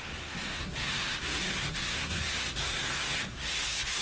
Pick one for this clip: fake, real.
fake